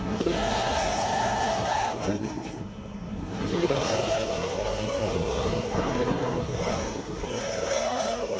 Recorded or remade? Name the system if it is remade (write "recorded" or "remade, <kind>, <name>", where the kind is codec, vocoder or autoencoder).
remade, codec, SNAC